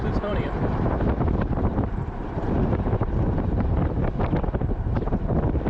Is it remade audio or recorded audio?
remade